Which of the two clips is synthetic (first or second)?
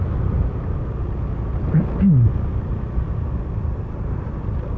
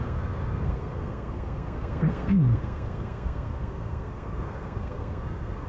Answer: second